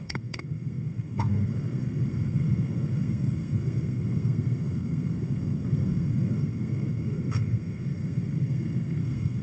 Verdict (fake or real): fake